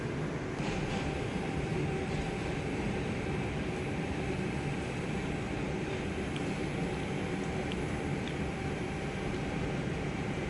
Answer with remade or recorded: recorded